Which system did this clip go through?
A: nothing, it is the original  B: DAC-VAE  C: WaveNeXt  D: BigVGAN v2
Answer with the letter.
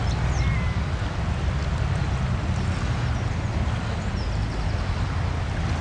A